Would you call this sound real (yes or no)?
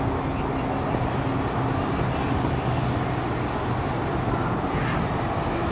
yes